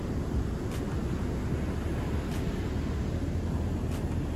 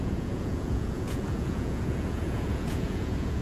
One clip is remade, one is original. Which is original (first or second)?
first